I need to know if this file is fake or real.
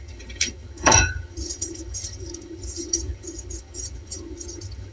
fake